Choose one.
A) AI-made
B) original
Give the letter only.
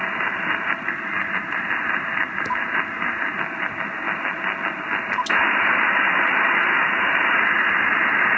B